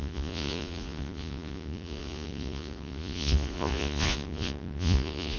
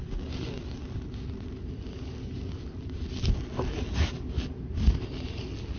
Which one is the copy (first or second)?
first